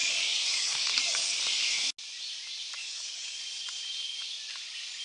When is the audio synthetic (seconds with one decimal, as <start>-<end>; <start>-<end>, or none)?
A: 0.0-1.4; 2.8-3.4